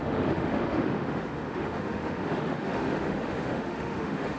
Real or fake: fake